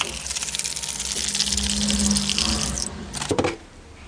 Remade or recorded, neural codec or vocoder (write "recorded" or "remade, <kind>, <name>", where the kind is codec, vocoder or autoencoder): recorded